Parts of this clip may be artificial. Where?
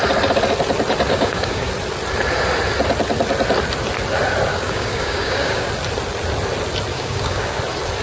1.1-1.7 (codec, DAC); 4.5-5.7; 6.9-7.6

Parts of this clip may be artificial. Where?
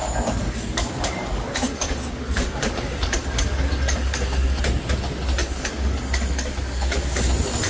0.0-4.6 (codec, DAC); 5.4-7.3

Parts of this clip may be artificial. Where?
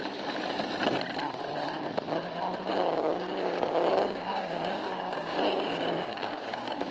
2.7-6.9 (codec, DAC)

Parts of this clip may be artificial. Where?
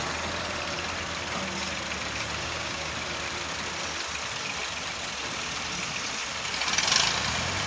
2.4-2.9 (codec, DAC)